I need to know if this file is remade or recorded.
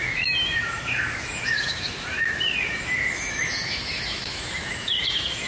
remade